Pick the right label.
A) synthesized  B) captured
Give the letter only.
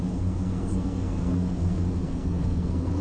A